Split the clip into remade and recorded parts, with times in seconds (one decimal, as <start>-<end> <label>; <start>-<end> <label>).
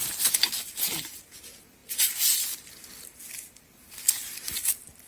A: 0.0-5.1 recorded